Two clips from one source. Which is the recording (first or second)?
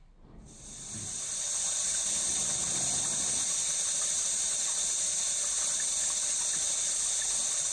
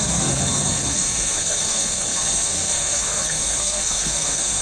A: first